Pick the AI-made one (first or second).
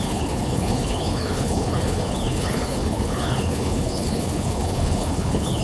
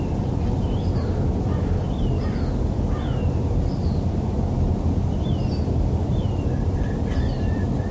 first